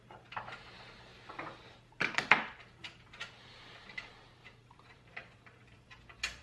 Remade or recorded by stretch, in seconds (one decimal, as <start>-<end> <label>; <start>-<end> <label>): 0.0-1.1 remade; 1.1-1.7 recorded; 1.7-5.2 remade; 5.2-6.4 recorded